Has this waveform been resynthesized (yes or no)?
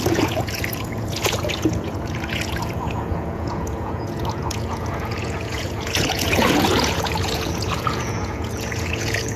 yes